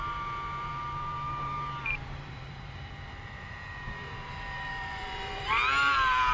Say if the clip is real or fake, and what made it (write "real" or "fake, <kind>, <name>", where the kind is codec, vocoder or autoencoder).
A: fake, vocoder, BigVGAN v2